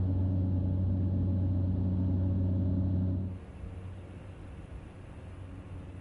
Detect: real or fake real